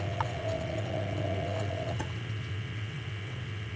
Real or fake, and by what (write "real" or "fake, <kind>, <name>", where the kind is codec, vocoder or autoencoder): fake, vocoder, WaveNeXt